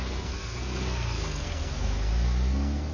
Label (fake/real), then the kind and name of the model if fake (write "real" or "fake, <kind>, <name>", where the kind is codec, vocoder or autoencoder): fake, codec, SNAC